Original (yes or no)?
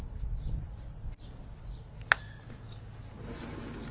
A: yes